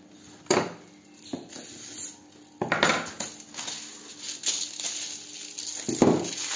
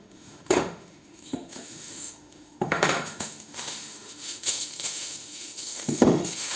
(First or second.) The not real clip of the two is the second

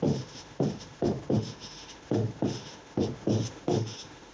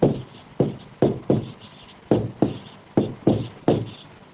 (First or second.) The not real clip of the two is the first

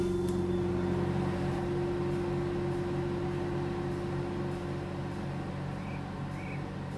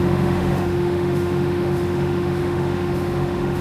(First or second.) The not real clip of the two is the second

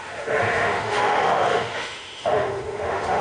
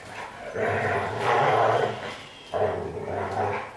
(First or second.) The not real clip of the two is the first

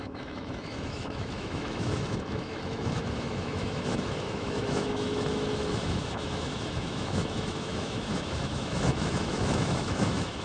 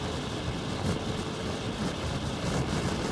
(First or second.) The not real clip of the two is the first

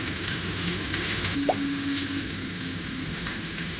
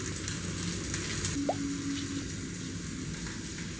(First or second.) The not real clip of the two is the first